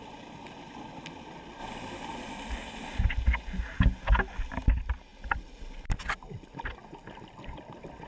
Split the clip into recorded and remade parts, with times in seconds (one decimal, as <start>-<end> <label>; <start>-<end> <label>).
0.0-8.1 recorded